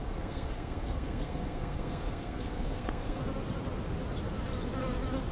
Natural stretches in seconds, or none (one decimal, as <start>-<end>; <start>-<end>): 3.2-5.3